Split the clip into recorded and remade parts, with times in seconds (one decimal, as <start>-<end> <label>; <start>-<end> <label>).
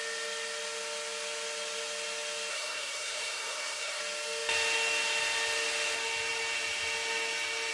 0.0-2.5 recorded; 2.5-4.0 remade; 4.0-7.7 recorded